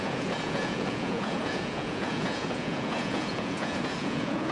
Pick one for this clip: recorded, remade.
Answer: remade